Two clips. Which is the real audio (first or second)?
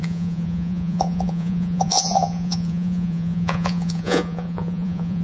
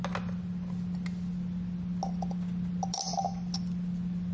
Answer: second